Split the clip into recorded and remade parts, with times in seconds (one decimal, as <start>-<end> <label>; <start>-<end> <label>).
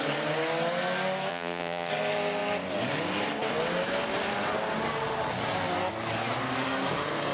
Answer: 0.0-1.3 recorded; 1.3-1.9 remade; 1.9-7.3 recorded